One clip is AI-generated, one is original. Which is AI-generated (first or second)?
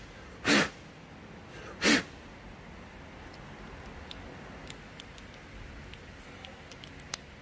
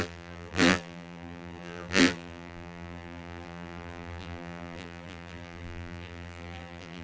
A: second